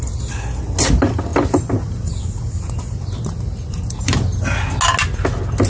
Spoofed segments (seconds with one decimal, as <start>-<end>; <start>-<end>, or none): none